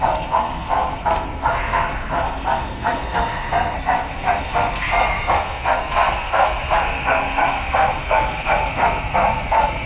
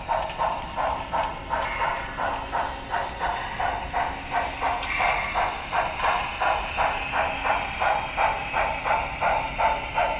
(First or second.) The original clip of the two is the second